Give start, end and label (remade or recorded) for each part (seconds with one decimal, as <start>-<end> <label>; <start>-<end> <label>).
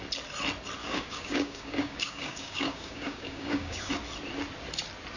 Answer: 0.0-0.8 recorded; 0.8-3.9 remade; 3.9-5.2 recorded